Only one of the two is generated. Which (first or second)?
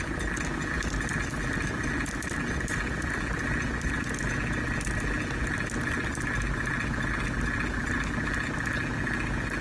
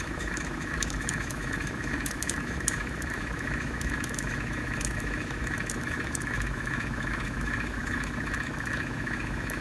second